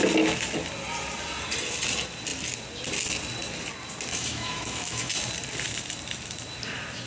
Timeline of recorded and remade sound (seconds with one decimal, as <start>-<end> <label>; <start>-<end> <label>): 0.0-4.1 recorded; 4.1-5.1 remade; 5.1-7.1 recorded